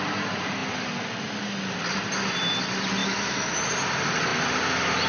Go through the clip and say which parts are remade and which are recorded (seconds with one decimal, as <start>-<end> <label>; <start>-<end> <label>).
0.0-3.0 recorded; 3.0-3.6 remade; 3.6-5.1 recorded